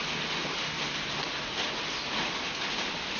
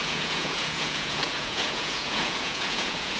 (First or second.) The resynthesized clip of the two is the second